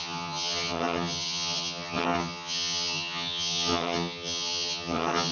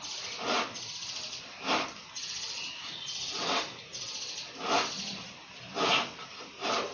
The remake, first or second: first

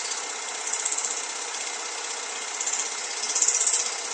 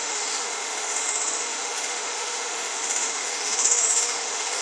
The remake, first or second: second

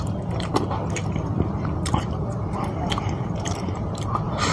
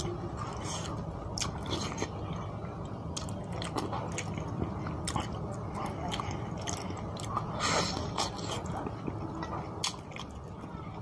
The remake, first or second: first